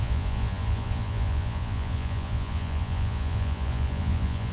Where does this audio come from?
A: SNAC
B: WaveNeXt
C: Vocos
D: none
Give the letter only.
C